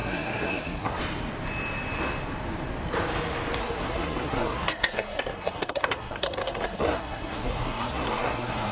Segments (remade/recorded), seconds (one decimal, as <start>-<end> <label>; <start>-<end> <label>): 0.0-1.0 remade; 1.0-3.6 recorded; 3.6-8.7 remade